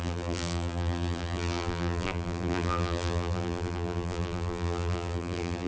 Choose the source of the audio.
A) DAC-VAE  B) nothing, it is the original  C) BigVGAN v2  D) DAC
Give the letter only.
C